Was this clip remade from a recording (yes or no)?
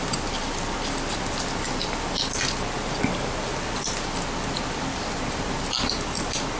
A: no